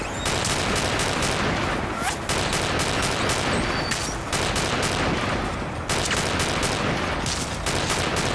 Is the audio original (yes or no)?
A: yes